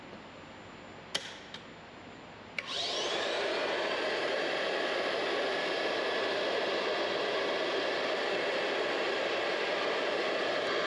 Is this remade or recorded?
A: recorded